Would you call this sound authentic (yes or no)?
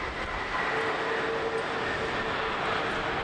yes